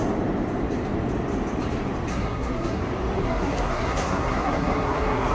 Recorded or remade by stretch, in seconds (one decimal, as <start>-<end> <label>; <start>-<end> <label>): 0.0-2.1 recorded; 2.1-2.8 remade; 2.8-3.2 recorded; 3.2-5.3 remade